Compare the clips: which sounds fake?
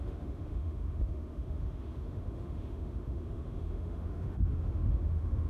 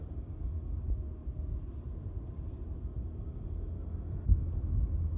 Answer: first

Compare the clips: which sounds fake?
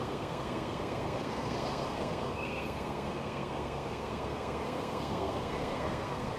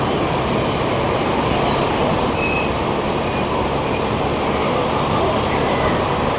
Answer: first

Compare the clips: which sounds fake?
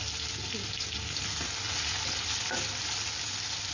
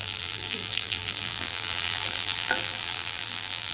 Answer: second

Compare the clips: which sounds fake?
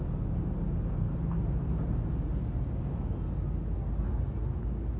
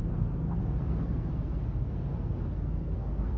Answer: second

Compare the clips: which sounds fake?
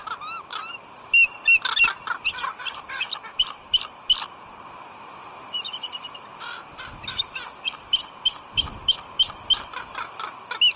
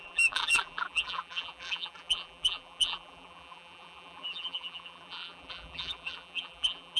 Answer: second